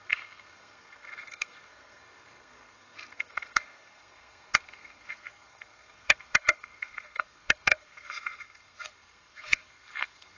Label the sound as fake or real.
fake